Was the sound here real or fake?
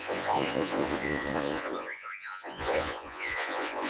fake